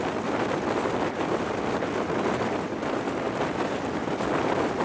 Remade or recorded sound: remade